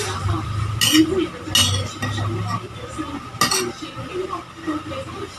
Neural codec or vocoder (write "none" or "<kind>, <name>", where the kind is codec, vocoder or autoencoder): none